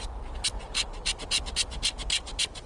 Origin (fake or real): real